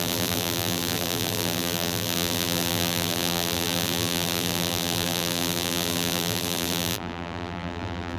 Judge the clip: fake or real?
fake